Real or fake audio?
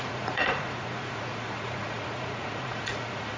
fake